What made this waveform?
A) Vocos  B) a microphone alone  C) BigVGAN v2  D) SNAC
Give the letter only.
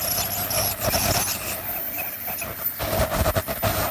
B